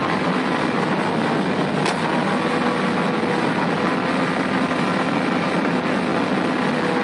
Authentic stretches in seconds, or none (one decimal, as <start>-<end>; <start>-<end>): 1.2-4.2; 6.1-7.0